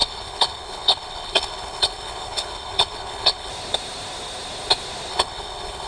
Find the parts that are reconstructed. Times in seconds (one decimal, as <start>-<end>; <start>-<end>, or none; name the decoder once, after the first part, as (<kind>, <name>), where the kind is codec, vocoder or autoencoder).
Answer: 0.0-3.5 (codec, HILCodec); 5.1-5.9